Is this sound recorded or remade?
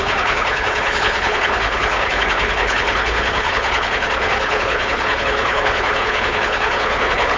remade